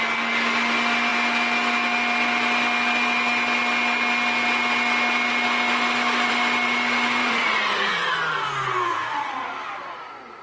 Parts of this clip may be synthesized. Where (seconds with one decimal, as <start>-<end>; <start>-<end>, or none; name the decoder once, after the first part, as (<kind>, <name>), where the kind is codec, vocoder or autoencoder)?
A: 7.2-8.1 (vocoder, Vocos); 8.9-9.5